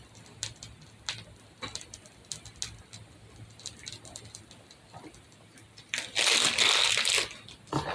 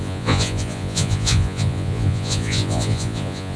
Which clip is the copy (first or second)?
second